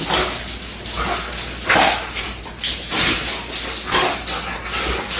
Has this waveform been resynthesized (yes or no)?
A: no